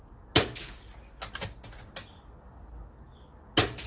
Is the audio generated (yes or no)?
no